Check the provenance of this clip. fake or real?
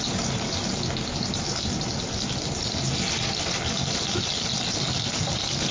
real